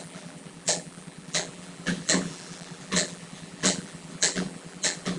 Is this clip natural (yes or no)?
no